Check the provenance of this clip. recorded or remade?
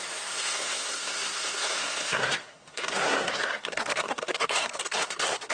remade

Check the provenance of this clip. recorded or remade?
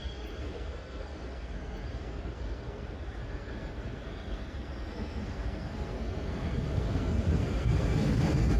remade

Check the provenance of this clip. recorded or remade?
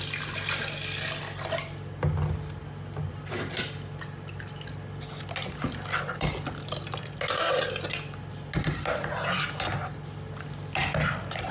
recorded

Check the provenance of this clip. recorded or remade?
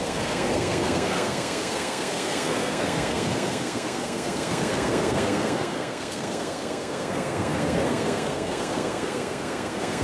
remade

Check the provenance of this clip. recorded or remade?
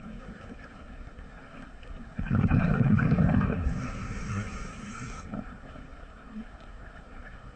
remade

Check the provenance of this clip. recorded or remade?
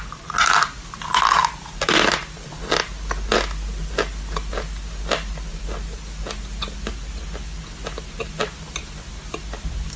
recorded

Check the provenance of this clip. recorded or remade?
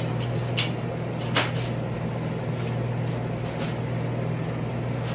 recorded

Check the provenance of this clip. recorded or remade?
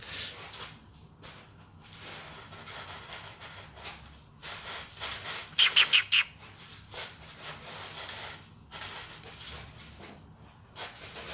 recorded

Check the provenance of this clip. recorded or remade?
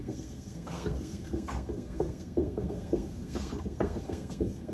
remade